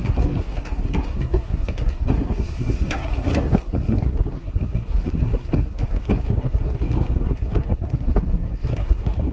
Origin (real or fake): fake